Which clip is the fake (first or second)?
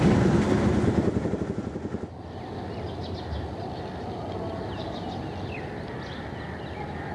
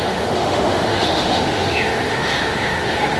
second